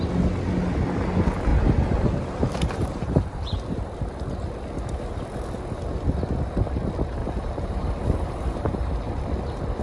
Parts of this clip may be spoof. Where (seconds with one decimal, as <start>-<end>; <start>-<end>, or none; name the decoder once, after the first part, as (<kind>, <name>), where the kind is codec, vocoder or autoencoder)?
1.5-4.0 (vocoder, BigVGAN v2); 7.2-9.2